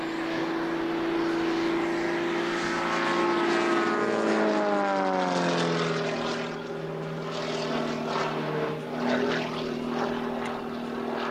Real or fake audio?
real